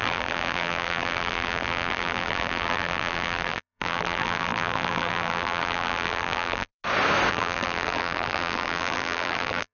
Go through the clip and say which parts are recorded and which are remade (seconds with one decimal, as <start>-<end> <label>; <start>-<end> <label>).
0.0-6.7 remade; 6.7-7.3 recorded; 7.3-9.7 remade